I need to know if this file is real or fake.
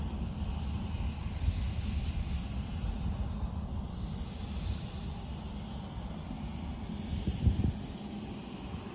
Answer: real